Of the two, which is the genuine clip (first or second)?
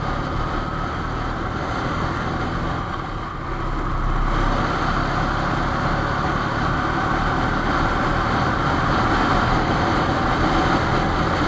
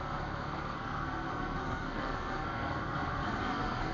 first